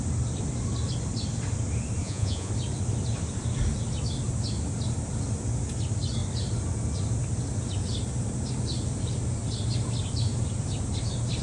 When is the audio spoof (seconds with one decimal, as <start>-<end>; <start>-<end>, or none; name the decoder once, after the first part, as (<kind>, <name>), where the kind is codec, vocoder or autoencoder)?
2.0-2.5 (vocoder, Vocos)